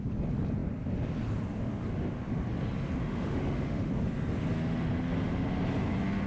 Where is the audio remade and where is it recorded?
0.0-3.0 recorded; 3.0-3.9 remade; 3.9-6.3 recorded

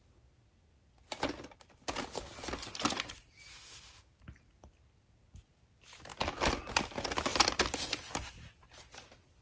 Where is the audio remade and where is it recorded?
0.0-3.5 recorded; 3.5-4.1 remade; 4.1-9.4 recorded

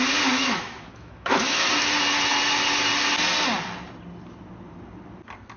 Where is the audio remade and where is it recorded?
0.0-0.4 recorded; 0.4-1.7 remade; 1.7-5.6 recorded

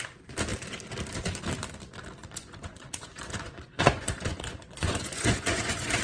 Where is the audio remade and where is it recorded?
0.0-2.2 recorded; 2.2-6.0 remade

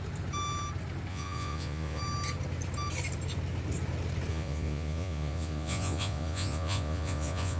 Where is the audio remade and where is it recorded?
0.0-1.1 recorded; 1.1-2.0 remade; 2.0-4.3 recorded; 4.3-7.6 remade

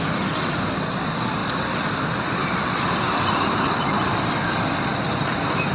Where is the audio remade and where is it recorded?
0.0-5.7 recorded

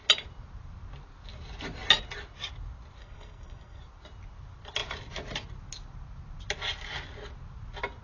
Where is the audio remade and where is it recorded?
0.0-3.0 recorded; 3.0-3.8 remade; 3.8-8.0 recorded